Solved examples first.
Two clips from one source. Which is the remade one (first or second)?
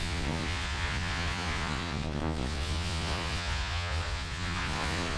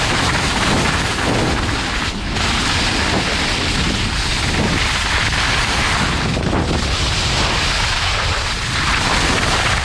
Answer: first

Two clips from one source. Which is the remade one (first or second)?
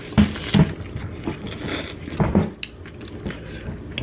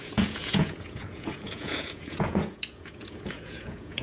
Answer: second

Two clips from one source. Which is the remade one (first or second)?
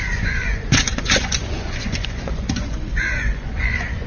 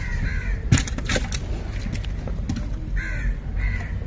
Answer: first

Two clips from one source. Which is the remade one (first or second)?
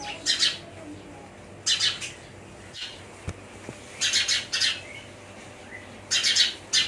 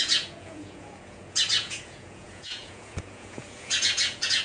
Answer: second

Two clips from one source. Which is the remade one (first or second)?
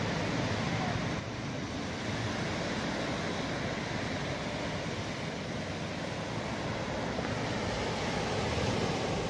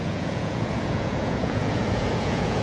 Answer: second